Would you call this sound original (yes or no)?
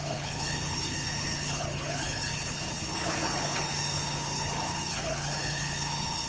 no